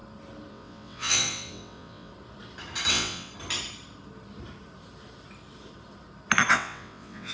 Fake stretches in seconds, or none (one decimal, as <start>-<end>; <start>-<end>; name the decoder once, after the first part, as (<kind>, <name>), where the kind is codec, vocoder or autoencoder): 0.5-2.1 (vocoder, WaveNeXt); 2.9-3.3; 6.5-7.3